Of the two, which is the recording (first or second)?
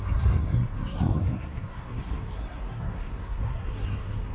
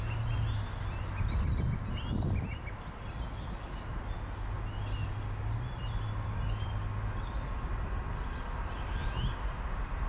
second